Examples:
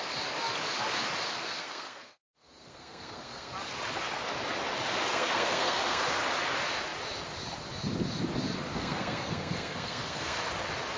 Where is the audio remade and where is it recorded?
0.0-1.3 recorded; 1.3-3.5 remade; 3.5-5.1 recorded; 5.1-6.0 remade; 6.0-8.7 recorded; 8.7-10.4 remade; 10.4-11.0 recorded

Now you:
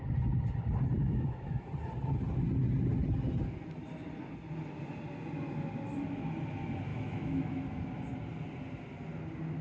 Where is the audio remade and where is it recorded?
0.0-1.0 recorded; 1.0-1.7 remade; 1.7-6.9 recorded; 6.9-7.8 remade; 7.8-9.6 recorded

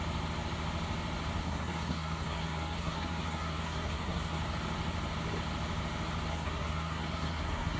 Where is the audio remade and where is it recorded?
0.0-1.4 recorded; 1.4-4.4 remade; 4.4-6.3 recorded; 6.3-7.8 remade

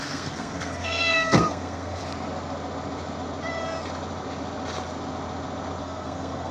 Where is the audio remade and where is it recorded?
0.0-2.0 remade; 2.0-5.8 recorded; 5.8-6.5 remade

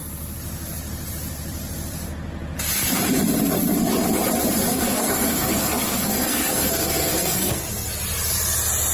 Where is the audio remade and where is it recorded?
0.0-4.7 recorded; 4.7-7.6 remade; 7.6-8.9 recorded

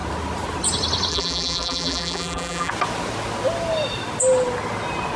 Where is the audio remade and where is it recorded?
0.0-1.1 recorded; 1.1-2.7 remade; 2.7-5.2 recorded